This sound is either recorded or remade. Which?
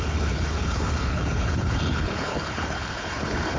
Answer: remade